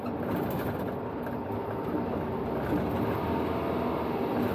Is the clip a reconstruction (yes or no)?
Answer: no